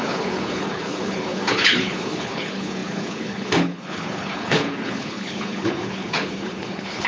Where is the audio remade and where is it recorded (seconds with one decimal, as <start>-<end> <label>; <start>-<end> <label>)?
0.0-7.1 remade